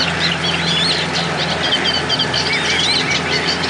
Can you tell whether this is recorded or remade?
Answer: recorded